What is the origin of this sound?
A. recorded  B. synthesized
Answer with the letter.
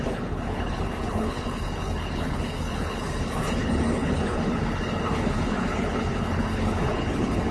B